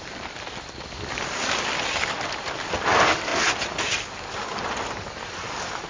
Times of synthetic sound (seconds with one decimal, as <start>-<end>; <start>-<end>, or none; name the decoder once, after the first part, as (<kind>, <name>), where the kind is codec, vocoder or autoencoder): none